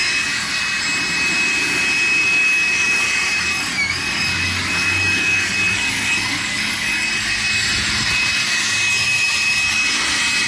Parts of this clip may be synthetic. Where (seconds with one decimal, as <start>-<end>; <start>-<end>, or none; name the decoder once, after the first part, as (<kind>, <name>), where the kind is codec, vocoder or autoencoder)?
0.0-0.6 (codec, DAC); 2.2-7.1